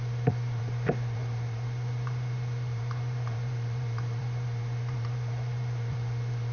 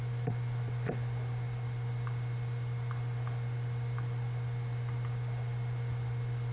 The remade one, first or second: first